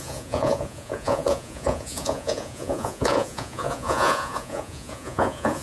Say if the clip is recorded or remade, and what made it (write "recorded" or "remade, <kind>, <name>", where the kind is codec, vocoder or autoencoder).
remade, vocoder, Vocos